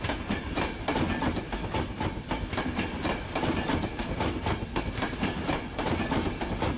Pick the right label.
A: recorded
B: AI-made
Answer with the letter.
A